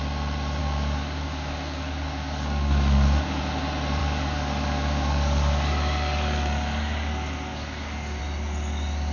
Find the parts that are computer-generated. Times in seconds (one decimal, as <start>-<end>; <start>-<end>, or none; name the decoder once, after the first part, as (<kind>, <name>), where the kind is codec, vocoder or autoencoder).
0.6-3.4 (codec, DAC); 4.0-8.2